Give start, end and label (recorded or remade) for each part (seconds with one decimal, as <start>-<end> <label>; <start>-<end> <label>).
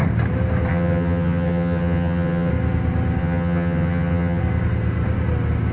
0.0-0.7 recorded; 0.7-2.5 remade; 2.5-3.2 recorded; 3.2-4.4 remade; 4.4-5.7 recorded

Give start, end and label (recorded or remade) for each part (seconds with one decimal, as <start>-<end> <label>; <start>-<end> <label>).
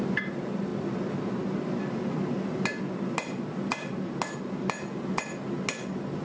0.0-6.2 recorded